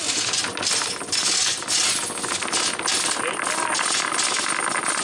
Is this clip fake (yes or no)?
no